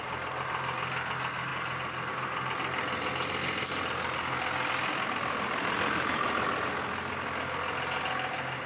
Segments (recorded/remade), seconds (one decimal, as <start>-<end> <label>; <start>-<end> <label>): 0.0-8.7 recorded